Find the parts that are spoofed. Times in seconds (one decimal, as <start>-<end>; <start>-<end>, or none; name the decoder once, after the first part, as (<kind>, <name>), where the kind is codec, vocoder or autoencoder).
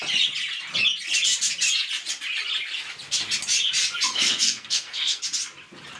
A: 4.1-5.2 (codec, SNAC)